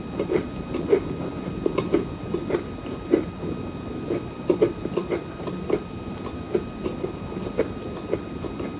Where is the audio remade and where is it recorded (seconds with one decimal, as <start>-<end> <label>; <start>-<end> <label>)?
0.0-8.8 recorded